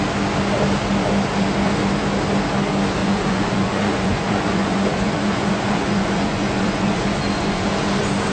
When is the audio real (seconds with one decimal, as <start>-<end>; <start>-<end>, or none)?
0.0-3.0; 7.7-8.3